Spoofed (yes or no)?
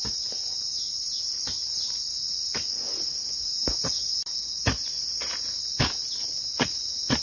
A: no